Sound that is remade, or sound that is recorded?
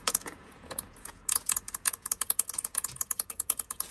remade